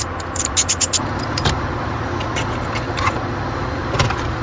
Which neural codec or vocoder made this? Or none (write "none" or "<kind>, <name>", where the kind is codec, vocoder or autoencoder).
none